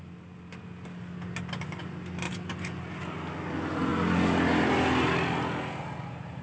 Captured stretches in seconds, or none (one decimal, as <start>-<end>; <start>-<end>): 0.0-6.4